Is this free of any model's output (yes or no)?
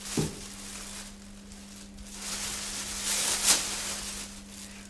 yes